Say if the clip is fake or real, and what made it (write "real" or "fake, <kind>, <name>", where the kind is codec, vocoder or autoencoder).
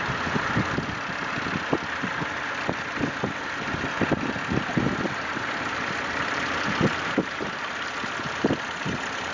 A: fake, vocoder, BigVGAN v2